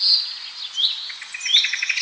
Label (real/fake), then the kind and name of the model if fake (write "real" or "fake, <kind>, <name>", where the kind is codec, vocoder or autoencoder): real